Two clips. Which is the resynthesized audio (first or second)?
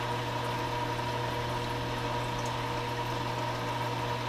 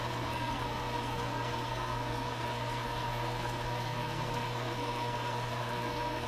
second